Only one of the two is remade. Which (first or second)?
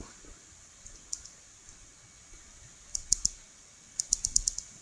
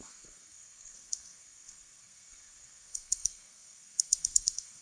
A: second